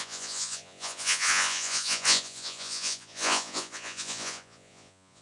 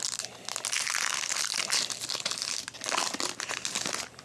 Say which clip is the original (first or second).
second